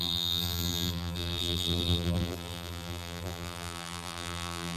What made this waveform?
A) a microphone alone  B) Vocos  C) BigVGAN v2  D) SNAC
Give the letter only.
C